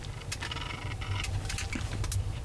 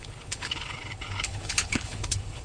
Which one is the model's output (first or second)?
second